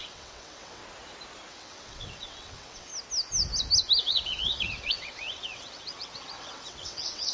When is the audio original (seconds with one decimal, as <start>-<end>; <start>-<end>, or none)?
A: 0.8-1.5; 2.9-4.0